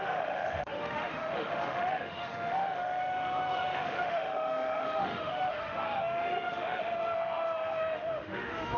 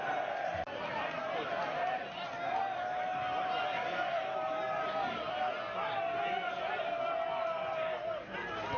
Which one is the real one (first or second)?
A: second